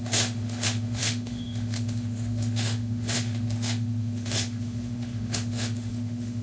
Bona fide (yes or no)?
no